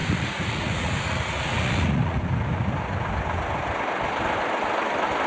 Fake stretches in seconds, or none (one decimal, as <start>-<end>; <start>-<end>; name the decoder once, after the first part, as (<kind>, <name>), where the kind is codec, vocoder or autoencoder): 0.0-2.2 (vocoder, Vocos)